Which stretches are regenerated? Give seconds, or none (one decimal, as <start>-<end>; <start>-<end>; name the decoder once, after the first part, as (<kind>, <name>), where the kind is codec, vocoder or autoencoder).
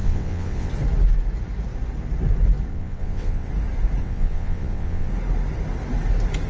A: 0.0-0.7 (vocoder, WaveNeXt); 2.7-3.5; 4.0-5.1